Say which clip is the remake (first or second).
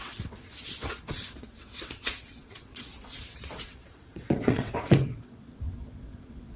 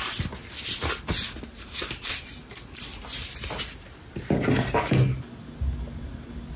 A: first